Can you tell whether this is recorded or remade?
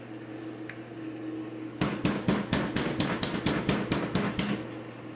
recorded